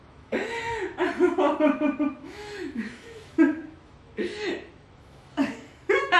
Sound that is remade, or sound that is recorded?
remade